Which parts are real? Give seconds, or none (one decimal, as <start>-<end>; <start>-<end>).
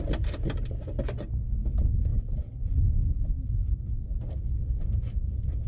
0.0-5.7